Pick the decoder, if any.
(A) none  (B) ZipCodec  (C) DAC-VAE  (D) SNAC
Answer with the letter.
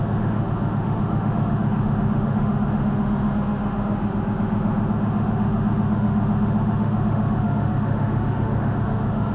C